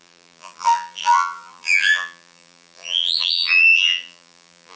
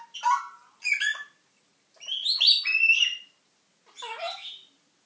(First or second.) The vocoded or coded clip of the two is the first